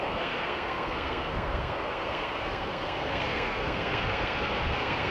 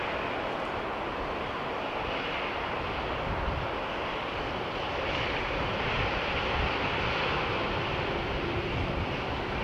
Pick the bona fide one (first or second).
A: second